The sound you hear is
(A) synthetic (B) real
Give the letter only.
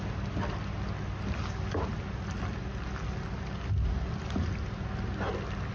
B